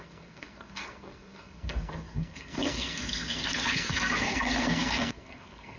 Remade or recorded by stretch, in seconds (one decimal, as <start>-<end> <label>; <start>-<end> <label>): 0.0-5.8 remade